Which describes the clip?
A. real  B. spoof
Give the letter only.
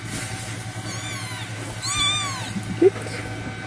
A